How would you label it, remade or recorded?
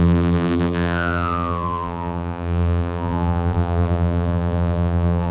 remade